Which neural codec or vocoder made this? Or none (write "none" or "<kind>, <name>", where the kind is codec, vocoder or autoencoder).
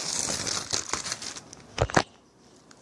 vocoder, BigVGAN v2